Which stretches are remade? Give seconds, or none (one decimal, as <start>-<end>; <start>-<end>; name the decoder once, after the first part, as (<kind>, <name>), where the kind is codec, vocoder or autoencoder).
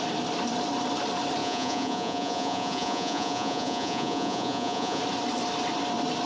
1.4-5.0 (vocoder, Vocos)